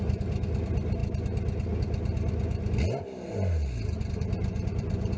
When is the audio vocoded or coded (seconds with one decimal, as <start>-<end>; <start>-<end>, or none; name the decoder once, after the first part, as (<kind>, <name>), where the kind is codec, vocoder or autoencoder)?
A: 0.0-1.0 (vocoder, BigVGAN v2); 4.1-5.2